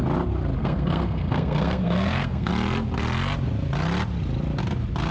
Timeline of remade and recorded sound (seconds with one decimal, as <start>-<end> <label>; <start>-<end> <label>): 0.0-0.6 recorded; 0.6-2.5 remade; 2.5-5.1 recorded